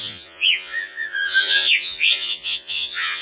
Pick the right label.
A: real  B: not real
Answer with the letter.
B